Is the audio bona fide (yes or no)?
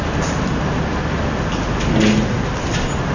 yes